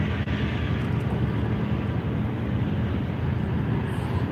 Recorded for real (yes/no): yes